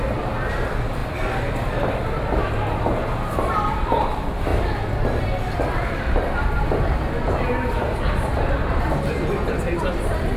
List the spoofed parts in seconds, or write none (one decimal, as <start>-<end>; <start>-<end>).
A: none